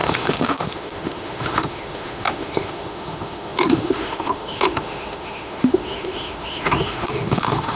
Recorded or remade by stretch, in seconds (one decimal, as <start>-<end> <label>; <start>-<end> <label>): 0.0-7.8 remade